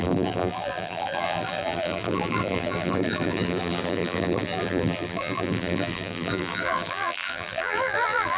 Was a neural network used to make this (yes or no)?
yes